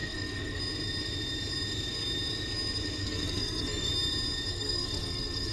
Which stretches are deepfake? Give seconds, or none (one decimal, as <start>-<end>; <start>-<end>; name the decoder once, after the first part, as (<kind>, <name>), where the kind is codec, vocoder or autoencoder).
0.0-0.6 (codec, SNAC); 3.0-3.9; 4.5-5.5